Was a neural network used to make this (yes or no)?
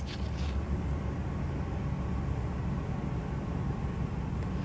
no